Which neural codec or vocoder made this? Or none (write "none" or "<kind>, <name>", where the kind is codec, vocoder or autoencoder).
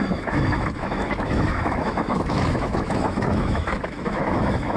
autoencoder, DAC-VAE